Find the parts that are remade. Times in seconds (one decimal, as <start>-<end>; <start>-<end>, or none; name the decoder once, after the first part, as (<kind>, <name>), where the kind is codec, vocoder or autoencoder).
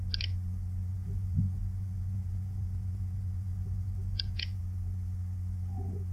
0.9-4.6 (vocoder, Vocos)